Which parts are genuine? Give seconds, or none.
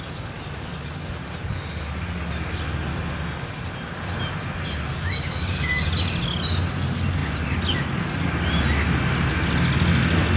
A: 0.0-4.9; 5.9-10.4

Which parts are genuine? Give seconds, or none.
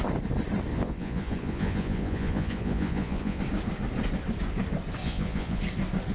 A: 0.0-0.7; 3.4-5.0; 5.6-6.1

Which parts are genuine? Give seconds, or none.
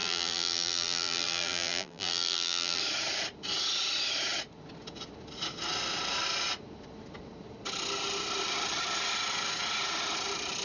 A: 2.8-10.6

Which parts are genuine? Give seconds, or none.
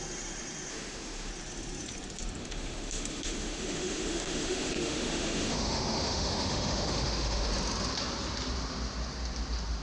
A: 0.0-0.7; 1.3-2.4; 7.5-9.8